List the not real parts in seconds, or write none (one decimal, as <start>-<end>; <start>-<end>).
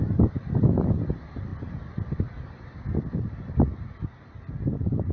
none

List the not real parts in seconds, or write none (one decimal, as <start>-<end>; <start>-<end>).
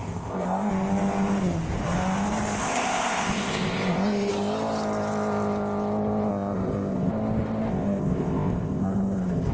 0.0-0.7; 2.6-4.3; 6.3-7.1; 7.7-9.5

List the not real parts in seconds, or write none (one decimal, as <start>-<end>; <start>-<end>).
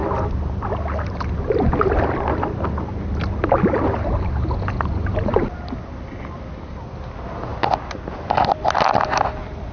none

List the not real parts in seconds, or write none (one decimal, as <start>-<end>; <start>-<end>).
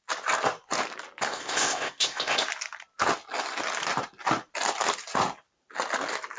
1.3-2.4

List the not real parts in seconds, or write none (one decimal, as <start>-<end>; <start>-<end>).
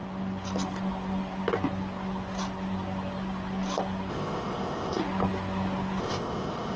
4.1-5.0; 6.0-6.8